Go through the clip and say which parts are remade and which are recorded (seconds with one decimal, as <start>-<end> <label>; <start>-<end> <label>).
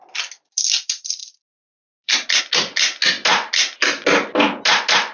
0.0-5.1 recorded